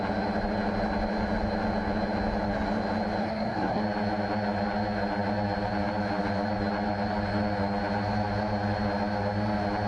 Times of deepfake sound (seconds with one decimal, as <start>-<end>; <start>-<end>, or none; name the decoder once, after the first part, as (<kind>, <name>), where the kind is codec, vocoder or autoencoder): 3.2-3.8 (codec, SNAC)

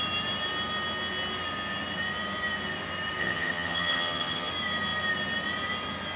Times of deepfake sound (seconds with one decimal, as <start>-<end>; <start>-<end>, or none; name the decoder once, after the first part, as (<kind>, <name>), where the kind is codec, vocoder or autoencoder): 3.2-4.5 (vocoder, HiFi-GAN)

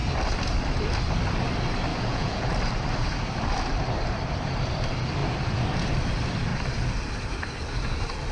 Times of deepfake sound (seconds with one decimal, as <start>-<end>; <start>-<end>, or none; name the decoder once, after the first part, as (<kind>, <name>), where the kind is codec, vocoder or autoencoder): 1.9-2.5 (vocoder, Vocos)

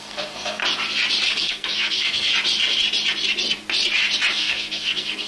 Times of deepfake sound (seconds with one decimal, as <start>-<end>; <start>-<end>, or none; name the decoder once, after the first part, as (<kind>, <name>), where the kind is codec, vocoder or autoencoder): 0.0-0.6 (codec, SNAC); 1.3-2.3; 4.3-5.3

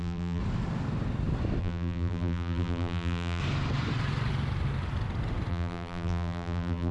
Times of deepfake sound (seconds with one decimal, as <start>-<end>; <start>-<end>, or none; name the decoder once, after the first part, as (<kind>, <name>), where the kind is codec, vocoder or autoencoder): 0.0-0.4 (vocoder, BigVGAN v2); 1.6-3.4; 5.5-6.9

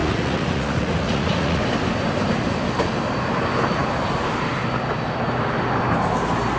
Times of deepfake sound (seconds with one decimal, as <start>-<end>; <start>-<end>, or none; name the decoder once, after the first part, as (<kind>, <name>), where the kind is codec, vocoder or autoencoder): 0.0-1.6 (vocoder, Vocos)

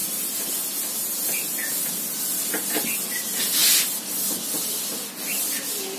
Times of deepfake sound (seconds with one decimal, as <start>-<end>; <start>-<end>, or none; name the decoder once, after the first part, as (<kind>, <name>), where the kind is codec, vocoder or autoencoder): none

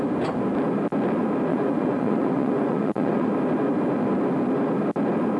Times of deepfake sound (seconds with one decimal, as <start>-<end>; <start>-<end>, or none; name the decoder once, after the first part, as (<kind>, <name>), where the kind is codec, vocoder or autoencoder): 1.5-3.3 (vocoder, Vocos)